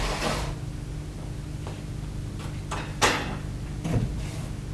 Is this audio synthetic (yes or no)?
no